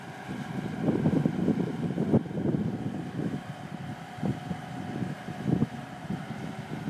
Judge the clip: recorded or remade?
recorded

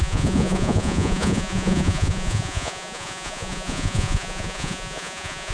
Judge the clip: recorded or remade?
remade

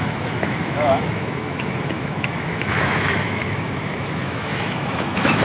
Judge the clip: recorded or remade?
remade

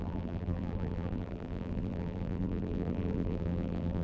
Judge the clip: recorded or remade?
remade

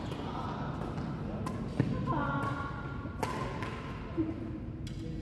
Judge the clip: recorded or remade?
recorded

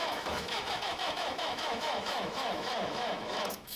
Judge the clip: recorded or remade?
remade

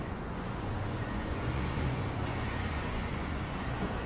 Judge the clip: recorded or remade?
remade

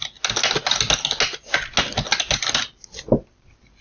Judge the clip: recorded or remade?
recorded